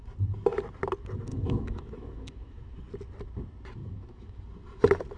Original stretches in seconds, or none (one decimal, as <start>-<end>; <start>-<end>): 0.0-1.3; 2.7-3.8; 4.4-5.2